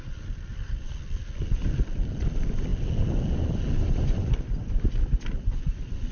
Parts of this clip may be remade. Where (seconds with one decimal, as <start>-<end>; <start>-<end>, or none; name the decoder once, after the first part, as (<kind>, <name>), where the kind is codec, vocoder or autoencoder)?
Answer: none